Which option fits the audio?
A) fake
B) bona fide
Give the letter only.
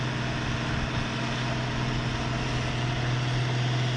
B